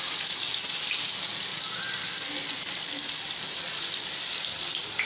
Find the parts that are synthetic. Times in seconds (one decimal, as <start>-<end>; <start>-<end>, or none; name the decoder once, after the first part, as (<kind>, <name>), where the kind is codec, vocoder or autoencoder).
0.5-1.1 (vocoder, BigVGAN v2); 1.5-4.6